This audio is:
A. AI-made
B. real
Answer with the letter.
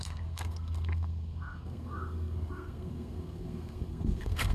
A